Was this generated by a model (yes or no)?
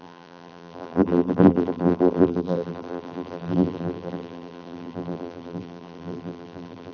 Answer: yes